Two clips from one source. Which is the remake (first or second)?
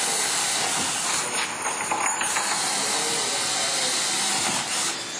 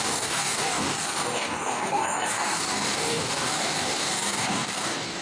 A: second